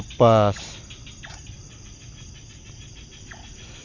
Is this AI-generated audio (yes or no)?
no